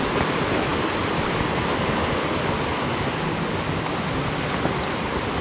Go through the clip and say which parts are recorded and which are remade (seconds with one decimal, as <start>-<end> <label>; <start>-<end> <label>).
0.0-5.4 recorded